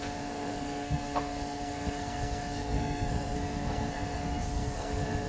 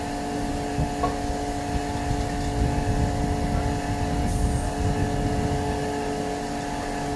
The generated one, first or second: first